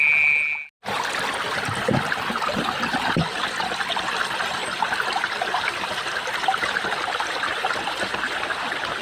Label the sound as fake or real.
real